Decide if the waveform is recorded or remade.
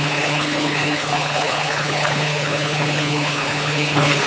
remade